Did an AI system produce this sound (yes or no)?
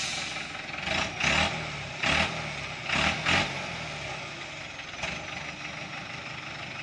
no